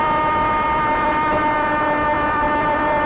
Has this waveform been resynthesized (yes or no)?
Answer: yes